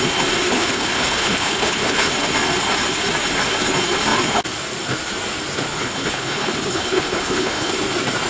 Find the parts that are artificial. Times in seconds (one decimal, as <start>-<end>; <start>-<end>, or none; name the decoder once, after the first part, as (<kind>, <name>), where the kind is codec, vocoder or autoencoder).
0.5-2.1 (codec, HILCodec); 5.7-7.7